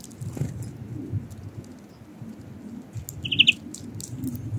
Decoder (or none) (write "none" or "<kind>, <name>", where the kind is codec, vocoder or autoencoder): none